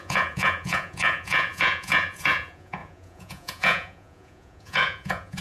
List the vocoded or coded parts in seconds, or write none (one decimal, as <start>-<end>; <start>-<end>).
0.0-5.4